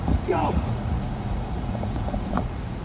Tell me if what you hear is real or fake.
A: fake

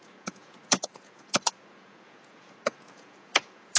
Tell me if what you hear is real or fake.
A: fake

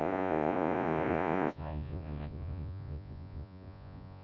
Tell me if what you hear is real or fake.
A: fake